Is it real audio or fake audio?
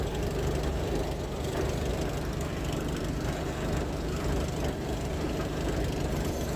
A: fake